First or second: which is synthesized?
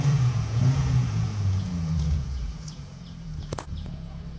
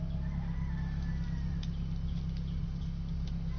first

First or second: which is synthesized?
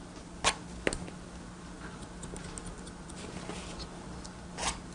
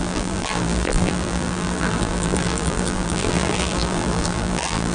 second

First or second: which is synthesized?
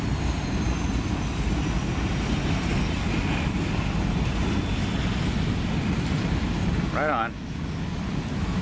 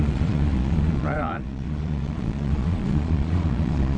second